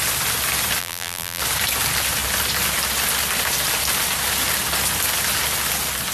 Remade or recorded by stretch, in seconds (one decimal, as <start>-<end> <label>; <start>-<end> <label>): 0.0-0.8 recorded; 0.8-1.4 remade; 1.4-6.1 recorded